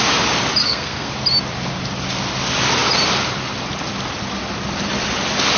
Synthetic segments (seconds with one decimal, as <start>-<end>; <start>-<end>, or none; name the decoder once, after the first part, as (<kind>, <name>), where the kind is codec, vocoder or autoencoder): 0.6-1.1 (codec, SNAC)

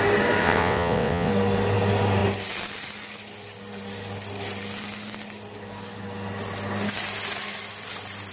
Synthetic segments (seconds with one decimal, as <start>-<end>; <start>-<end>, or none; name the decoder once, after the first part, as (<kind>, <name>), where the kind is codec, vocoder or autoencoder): 0.4-1.3 (vocoder, WaveNeXt)

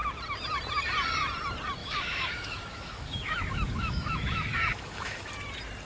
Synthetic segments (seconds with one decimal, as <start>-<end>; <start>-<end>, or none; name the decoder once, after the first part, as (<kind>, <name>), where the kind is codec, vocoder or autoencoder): 1.8-5.3 (autoencoder, DAC-VAE)

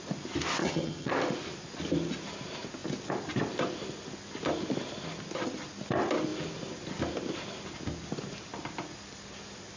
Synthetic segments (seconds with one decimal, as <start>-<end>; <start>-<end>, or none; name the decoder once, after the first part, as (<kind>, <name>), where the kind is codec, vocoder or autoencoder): 0.6-1.1 (vocoder, HiFi-GAN)

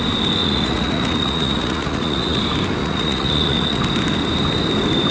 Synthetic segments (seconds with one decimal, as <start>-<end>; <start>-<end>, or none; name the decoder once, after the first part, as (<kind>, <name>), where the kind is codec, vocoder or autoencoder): 0.4-2.4 (vocoder, Vocos); 2.8-3.8

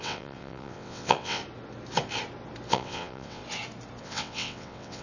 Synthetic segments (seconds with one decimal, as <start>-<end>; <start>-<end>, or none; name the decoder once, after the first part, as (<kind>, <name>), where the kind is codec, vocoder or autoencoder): 0.0-1.4 (vocoder, WaveNeXt); 2.7-3.4; 4.0-5.0

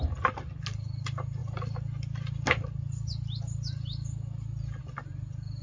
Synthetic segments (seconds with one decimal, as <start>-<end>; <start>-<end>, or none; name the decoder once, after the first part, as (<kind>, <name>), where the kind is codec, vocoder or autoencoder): none